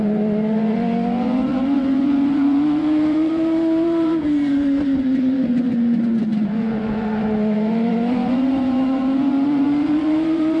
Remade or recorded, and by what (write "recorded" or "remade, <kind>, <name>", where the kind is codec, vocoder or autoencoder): remade, vocoder, Vocos